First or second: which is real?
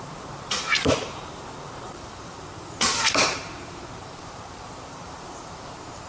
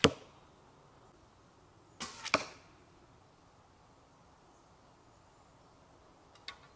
second